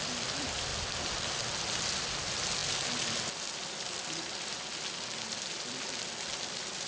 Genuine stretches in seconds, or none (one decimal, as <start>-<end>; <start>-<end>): 0.0-6.9